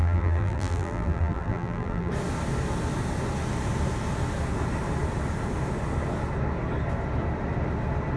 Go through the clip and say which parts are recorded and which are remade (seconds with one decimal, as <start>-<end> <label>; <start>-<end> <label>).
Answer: 0.0-2.1 remade; 2.1-8.2 recorded